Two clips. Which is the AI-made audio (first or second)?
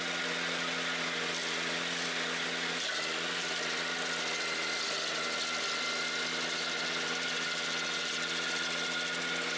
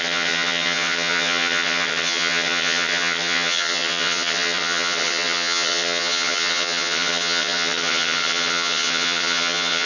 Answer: second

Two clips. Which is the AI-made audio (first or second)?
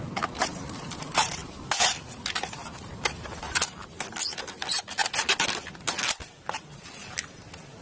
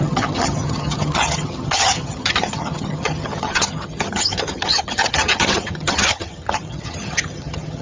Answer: second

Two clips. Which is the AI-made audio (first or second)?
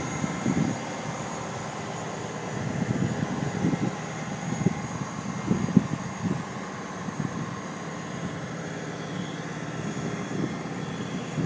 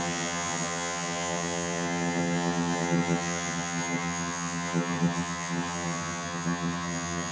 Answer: second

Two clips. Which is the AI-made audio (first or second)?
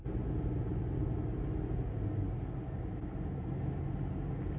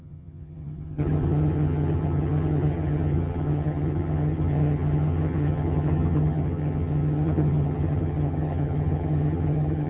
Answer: second